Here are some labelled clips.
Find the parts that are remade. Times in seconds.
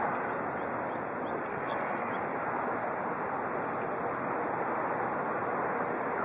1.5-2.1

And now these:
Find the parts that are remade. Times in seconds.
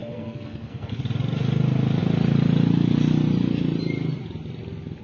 0.0-1.0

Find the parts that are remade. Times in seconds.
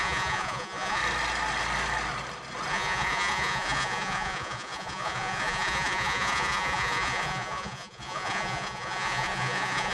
0.0-1.0; 2.7-9.9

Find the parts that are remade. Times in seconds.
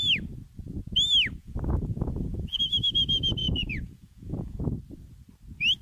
1.4-2.6; 3.4-4.6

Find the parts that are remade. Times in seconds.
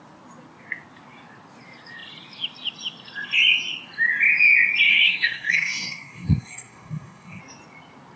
4.9-7.4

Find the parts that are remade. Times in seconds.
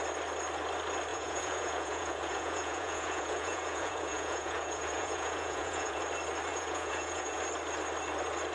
1.1-6.0; 6.5-7.4